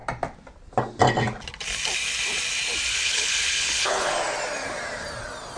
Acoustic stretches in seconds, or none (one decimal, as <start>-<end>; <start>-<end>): 0.0-2.9; 4.1-5.6